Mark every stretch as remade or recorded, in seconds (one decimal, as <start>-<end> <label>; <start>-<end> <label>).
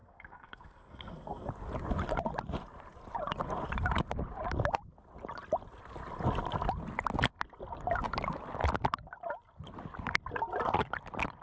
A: 0.0-1.5 remade; 1.5-11.4 recorded